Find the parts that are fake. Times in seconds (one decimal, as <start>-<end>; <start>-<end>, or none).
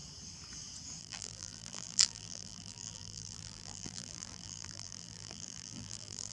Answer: 1.0-6.3